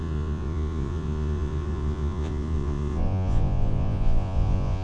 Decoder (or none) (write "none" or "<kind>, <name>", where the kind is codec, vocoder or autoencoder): vocoder, Vocos